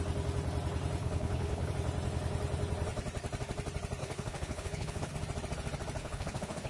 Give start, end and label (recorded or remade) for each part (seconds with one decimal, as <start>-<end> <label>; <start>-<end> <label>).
0.0-1.0 recorded; 1.0-1.7 remade; 1.7-4.0 recorded; 4.0-5.1 remade; 5.1-6.0 recorded; 6.0-6.7 remade

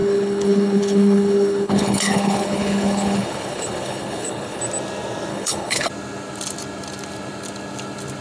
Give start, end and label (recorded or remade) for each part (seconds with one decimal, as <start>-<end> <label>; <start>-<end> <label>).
0.0-4.6 remade; 4.6-5.3 recorded; 5.3-5.9 remade; 5.9-8.2 recorded

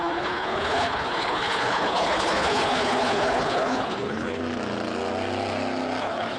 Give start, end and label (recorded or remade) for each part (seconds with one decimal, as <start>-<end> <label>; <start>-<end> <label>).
0.0-4.4 remade; 4.4-6.0 recorded; 6.0-6.4 remade

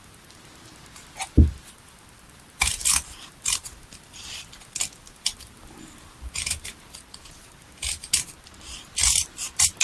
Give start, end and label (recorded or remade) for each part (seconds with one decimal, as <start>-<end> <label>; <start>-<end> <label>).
0.0-9.8 recorded

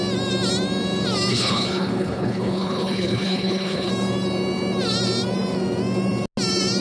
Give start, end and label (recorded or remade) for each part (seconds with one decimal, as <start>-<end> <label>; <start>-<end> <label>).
0.0-1.3 recorded; 1.3-3.9 remade; 3.9-6.8 recorded

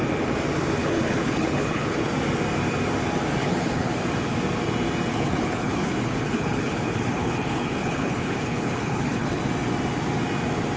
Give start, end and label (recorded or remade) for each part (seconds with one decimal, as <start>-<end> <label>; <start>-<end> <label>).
0.0-0.8 recorded; 0.8-2.1 remade; 2.1-3.4 recorded; 3.4-3.9 remade; 3.9-5.1 recorded; 5.1-9.4 remade; 9.4-10.8 recorded

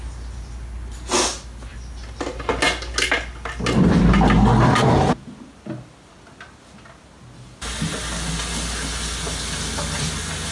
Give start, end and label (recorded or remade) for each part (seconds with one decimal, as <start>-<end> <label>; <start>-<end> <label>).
0.0-10.5 recorded

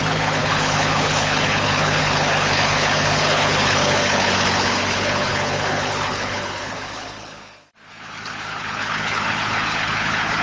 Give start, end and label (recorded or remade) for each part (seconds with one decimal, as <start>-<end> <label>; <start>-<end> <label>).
0.0-10.4 remade